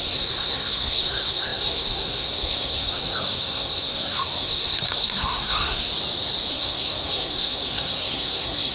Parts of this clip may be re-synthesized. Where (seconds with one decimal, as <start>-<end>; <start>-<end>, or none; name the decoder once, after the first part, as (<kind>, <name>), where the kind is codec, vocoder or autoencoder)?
0.0-5.9 (codec, SNAC); 6.5-8.7